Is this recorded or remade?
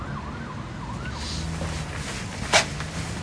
recorded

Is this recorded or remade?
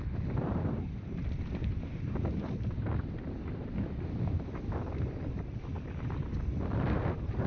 recorded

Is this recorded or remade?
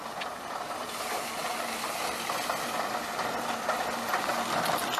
recorded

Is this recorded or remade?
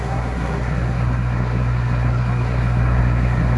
remade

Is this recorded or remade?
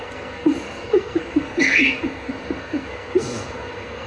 remade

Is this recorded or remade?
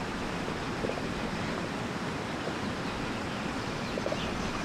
recorded